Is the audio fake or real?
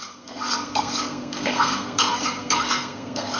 fake